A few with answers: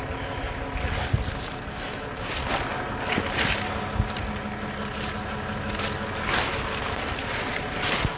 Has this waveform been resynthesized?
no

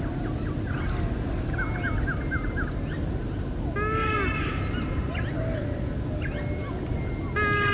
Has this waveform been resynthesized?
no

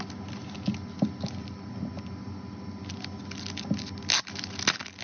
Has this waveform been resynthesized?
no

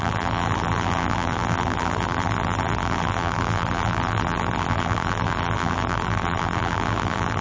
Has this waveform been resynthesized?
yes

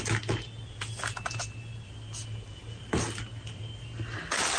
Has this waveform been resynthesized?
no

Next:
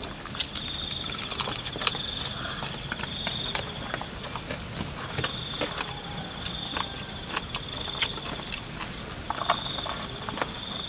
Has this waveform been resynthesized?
no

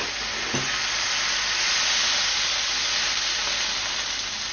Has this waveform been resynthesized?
no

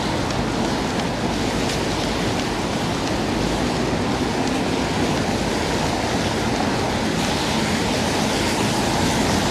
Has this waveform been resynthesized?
no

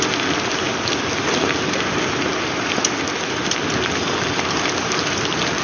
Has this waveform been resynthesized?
no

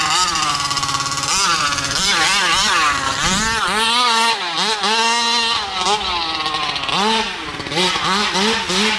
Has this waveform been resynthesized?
no